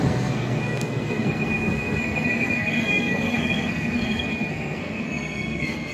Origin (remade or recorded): remade